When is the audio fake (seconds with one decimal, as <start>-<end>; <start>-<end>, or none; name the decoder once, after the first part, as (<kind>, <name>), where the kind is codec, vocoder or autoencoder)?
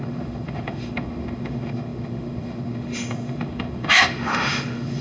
0.0-5.0 (autoencoder, DAC-VAE)